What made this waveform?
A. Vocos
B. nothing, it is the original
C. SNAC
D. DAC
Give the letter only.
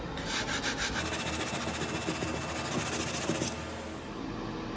B